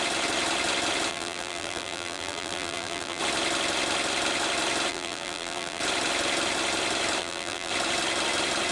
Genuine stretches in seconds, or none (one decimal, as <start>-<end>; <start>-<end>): 0.0-1.1; 3.2-4.9; 5.8-7.2; 7.7-8.7